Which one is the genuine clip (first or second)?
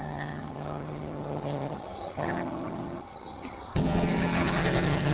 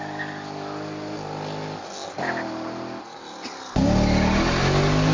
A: second